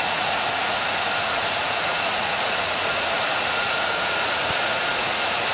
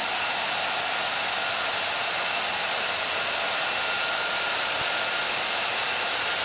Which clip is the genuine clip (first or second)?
second